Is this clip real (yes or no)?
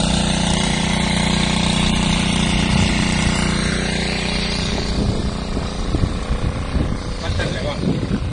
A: no